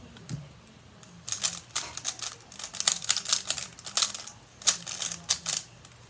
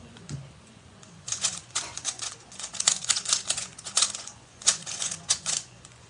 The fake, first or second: second